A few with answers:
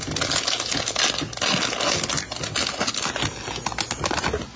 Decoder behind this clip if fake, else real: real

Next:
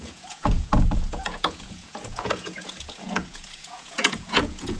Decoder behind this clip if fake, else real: fake, vocoder, Vocos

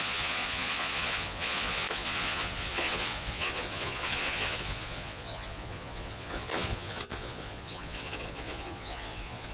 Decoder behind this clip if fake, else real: fake, vocoder, Vocos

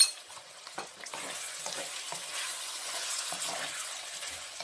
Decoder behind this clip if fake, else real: fake, vocoder, Vocos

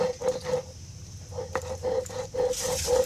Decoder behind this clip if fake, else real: real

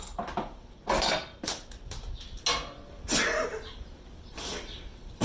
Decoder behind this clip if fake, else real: real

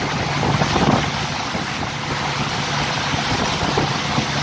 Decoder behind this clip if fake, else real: real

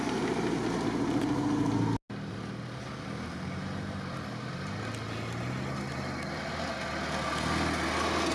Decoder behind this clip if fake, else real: real